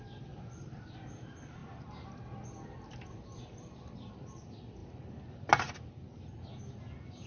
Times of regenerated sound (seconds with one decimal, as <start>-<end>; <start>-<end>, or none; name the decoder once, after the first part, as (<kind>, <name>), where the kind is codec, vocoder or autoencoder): none